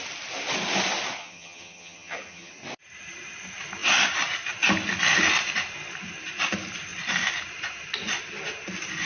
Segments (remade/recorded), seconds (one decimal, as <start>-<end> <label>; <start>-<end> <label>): 0.0-1.2 recorded; 1.2-2.5 remade; 2.5-9.1 recorded

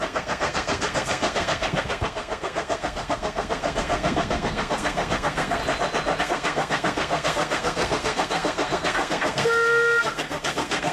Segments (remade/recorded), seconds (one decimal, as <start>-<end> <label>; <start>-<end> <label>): 0.0-5.6 remade; 5.6-6.2 recorded; 6.2-10.9 remade

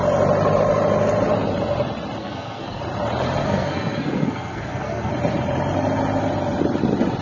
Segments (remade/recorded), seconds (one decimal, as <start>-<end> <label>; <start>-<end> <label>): 0.0-2.2 recorded; 2.2-2.8 remade; 2.8-3.4 recorded; 3.4-5.1 remade; 5.1-7.2 recorded

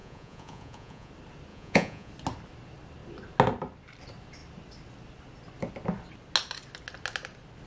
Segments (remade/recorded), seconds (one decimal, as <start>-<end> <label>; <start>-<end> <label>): 0.0-1.1 remade; 1.1-1.5 recorded; 1.5-2.1 remade; 2.1-7.7 recorded